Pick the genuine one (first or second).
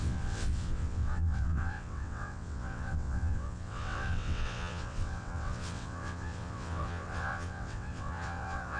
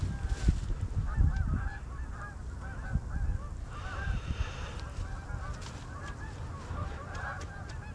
second